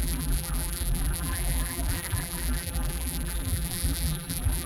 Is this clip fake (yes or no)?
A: yes